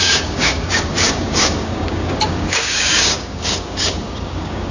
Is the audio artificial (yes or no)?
yes